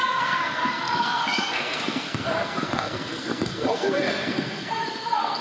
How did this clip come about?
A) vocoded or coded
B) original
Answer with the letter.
A